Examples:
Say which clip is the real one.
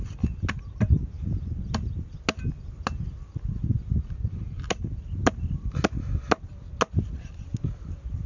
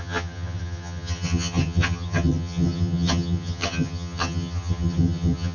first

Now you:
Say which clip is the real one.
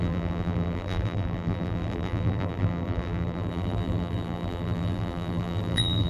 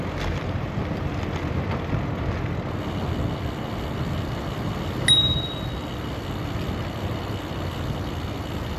second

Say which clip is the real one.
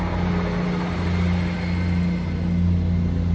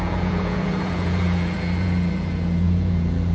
first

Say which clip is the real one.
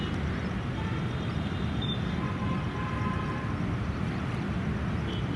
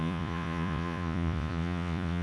first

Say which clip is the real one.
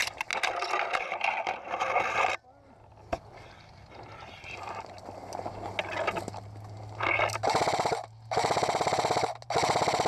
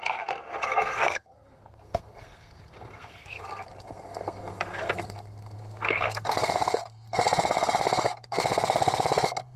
first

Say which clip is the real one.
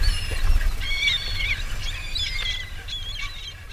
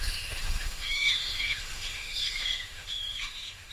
first